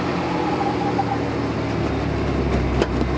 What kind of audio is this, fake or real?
real